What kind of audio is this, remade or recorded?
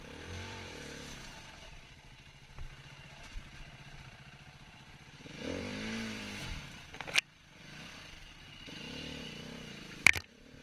remade